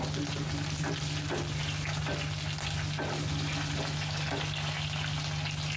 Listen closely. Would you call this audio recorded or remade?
recorded